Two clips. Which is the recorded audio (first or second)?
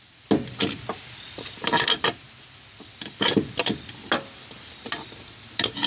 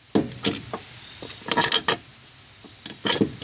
second